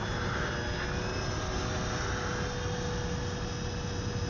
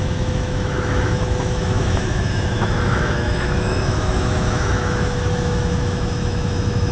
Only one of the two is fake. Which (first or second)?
second